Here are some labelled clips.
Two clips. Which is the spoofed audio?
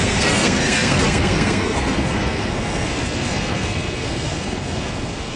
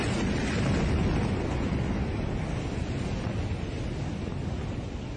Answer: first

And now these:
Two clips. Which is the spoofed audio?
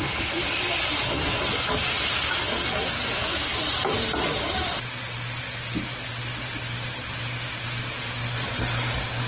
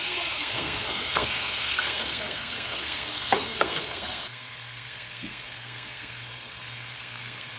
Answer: second